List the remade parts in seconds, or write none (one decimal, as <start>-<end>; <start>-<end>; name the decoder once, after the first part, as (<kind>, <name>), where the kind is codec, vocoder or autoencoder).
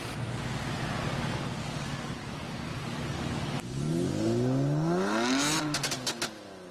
1.6-4.1 (codec, DAC)